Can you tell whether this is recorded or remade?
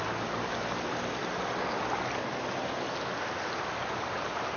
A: recorded